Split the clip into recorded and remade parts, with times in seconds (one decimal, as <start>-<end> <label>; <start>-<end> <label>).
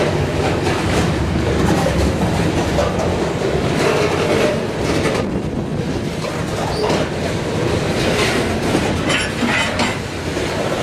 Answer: 0.0-2.2 remade; 2.2-3.1 recorded; 3.1-4.3 remade; 4.3-10.8 recorded